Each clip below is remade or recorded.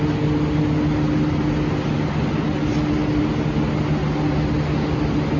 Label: recorded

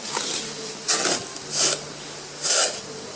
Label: recorded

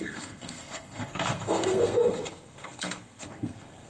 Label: remade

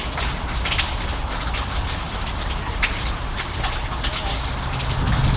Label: recorded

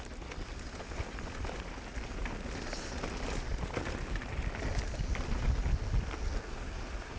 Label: recorded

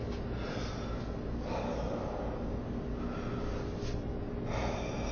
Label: recorded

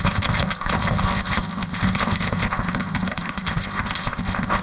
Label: remade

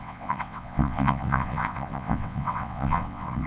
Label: remade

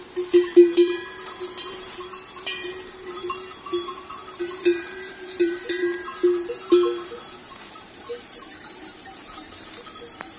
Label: remade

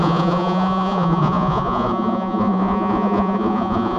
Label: remade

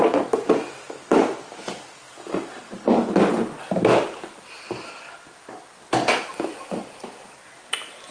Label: recorded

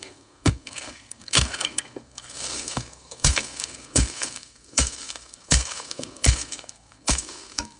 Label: remade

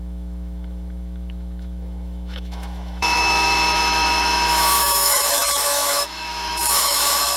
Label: remade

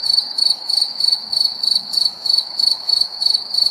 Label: remade